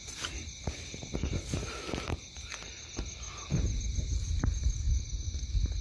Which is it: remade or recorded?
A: recorded